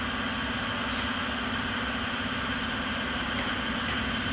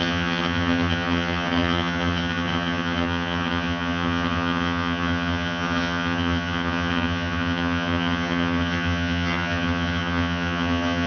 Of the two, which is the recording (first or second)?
first